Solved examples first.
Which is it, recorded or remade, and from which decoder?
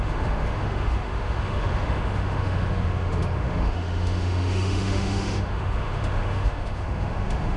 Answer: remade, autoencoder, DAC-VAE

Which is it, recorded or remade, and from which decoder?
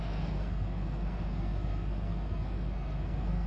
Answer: remade, codec, SNAC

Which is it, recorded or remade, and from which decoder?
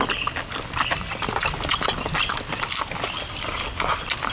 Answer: recorded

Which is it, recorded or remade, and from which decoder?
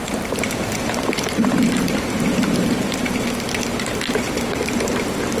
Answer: remade, vocoder, BigVGAN v2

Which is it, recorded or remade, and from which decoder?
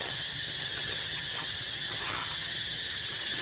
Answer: remade, vocoder, HiFi-GAN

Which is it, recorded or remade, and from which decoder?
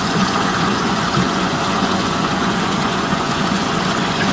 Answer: remade, vocoder, Vocos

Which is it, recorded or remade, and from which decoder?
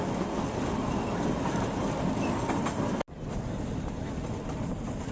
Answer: recorded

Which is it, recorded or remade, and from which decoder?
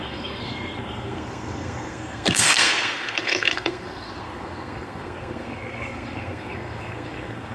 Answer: remade, codec, SNAC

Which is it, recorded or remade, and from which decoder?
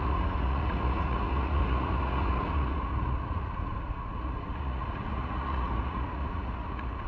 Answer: remade, vocoder, Vocos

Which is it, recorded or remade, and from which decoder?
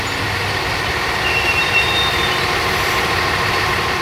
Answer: remade, vocoder, BigVGAN v2